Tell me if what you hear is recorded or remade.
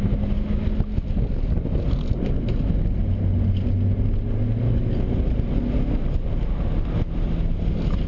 recorded